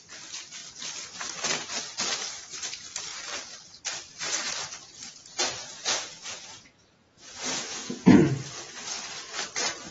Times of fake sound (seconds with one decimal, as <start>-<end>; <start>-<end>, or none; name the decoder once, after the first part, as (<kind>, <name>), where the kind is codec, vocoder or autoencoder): 5.8-8.2 (vocoder, Vocos)